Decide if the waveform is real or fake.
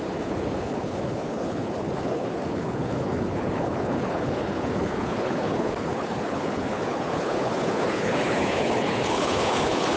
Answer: fake